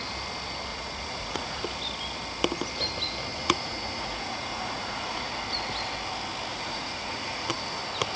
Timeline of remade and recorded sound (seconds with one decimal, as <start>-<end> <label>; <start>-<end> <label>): 0.0-0.7 recorded; 0.7-1.6 remade; 1.6-3.3 recorded; 3.3-5.3 remade; 5.3-6.5 recorded; 6.5-7.5 remade; 7.5-8.2 recorded

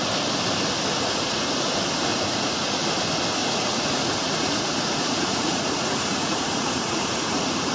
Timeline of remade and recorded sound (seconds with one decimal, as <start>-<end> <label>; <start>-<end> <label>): 0.0-0.9 recorded; 0.9-1.7 remade; 1.7-2.1 recorded; 2.1-2.8 remade; 2.8-3.4 recorded; 3.4-7.7 remade

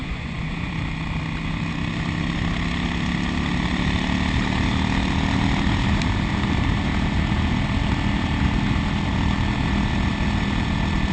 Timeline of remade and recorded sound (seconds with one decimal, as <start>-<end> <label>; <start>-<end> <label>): 0.0-0.7 remade; 0.7-11.1 recorded

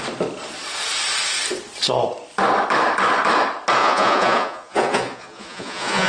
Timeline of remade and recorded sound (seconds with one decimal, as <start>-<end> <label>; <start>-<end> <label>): 0.0-3.8 recorded; 3.8-6.1 remade